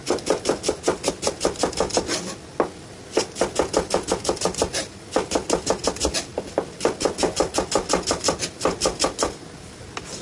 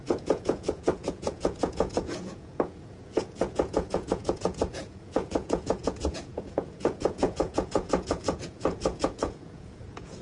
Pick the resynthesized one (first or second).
second